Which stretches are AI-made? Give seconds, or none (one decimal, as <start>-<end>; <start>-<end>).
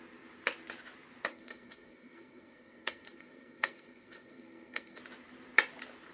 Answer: 1.3-5.0